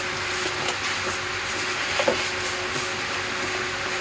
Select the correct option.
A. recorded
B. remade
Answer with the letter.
A